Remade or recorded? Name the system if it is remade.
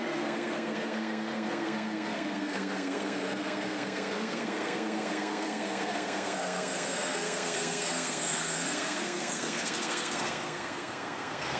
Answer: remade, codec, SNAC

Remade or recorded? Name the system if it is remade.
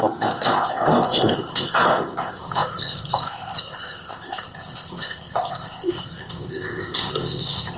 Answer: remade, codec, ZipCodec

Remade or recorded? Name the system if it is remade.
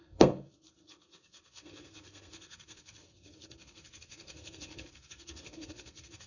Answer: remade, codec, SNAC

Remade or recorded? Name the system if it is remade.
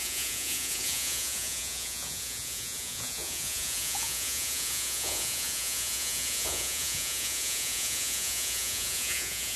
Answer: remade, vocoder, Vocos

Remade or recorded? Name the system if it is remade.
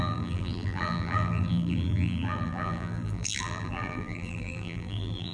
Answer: remade, vocoder, BigVGAN v2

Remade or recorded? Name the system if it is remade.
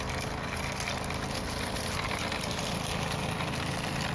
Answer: recorded